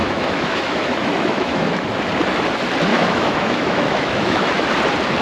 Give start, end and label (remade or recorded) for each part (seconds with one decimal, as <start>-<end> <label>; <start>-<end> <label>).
0.0-2.0 remade; 2.0-2.9 recorded; 2.9-4.7 remade; 4.7-5.2 recorded